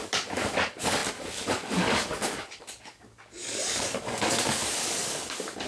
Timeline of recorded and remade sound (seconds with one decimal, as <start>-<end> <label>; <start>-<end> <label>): 0.0-5.7 remade